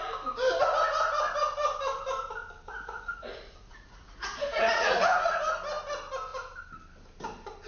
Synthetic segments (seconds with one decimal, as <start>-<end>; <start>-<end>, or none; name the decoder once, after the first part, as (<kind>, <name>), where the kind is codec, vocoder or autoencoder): 2.7-5.5 (vocoder, Vocos)